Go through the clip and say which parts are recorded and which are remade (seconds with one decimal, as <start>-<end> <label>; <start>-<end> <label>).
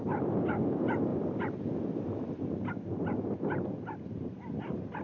0.0-5.0 recorded